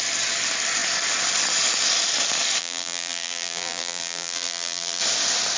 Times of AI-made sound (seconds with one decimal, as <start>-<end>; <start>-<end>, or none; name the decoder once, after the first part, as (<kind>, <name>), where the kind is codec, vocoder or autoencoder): 2.6-5.0 (vocoder, BigVGAN v2)